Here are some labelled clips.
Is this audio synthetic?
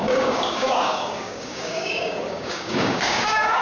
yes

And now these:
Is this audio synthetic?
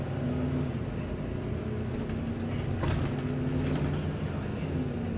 no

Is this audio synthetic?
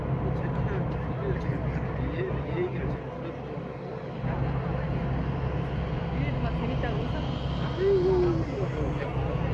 no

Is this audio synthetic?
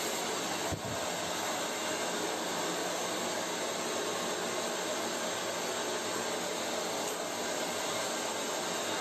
no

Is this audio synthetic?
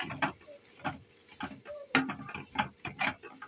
no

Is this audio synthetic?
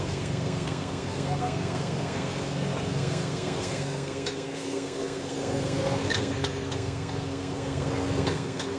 yes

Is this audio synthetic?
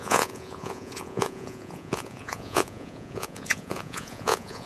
yes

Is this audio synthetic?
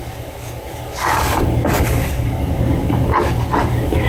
yes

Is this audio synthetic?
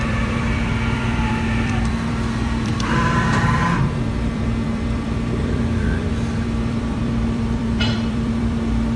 yes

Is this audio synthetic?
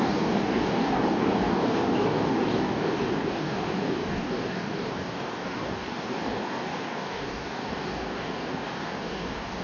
yes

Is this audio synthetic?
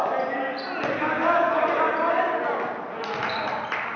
no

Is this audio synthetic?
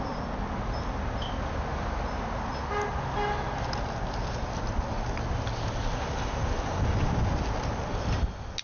no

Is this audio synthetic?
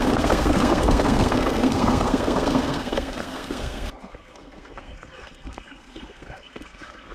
yes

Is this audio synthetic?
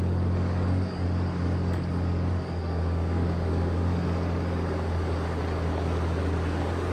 yes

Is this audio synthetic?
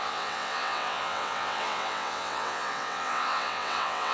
yes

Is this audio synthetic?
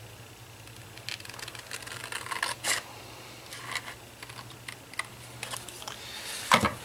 no